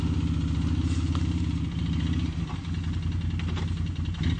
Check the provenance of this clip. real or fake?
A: real